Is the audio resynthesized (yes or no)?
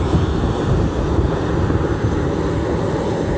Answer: no